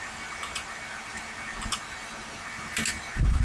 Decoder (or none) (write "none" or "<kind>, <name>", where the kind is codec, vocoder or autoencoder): none